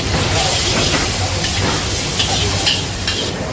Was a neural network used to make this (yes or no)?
no